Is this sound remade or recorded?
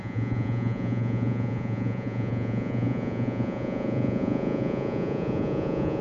remade